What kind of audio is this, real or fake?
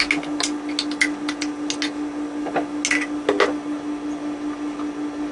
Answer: real